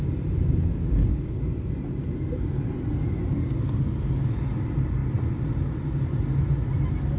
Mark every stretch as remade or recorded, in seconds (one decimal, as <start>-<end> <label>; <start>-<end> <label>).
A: 0.0-0.7 recorded; 0.7-1.5 remade; 1.5-7.2 recorded